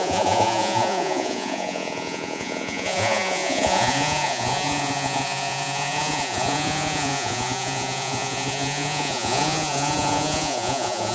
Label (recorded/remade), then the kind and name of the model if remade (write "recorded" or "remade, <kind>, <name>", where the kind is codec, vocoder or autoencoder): remade, vocoder, Vocos